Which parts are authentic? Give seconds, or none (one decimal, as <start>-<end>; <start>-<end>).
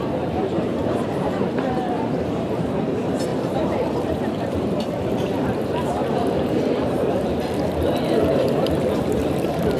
none